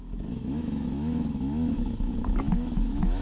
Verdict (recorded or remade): remade